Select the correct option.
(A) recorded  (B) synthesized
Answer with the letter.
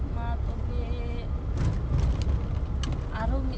A